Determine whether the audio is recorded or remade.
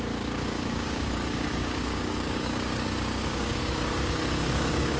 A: remade